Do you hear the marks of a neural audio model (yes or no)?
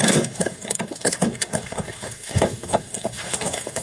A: yes